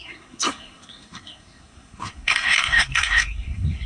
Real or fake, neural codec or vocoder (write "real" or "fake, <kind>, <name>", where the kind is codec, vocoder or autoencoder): fake, codec, SNAC